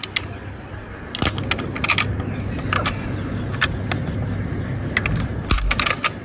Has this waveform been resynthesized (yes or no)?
no